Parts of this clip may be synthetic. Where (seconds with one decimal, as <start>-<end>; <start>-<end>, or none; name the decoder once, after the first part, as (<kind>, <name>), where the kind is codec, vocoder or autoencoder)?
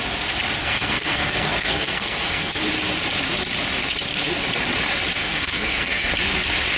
0.6-2.6 (codec, SNAC); 5.2-6.1